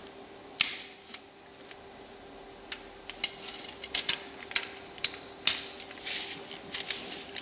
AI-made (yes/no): no